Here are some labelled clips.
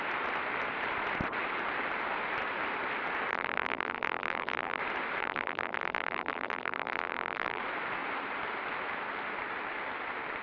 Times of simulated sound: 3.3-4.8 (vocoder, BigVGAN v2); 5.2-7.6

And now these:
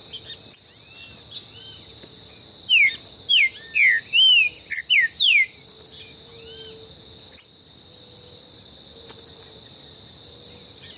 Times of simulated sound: none

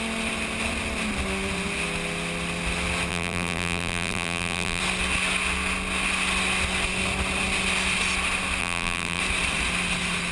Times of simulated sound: 3.1-4.8 (vocoder, BigVGAN v2); 8.6-9.2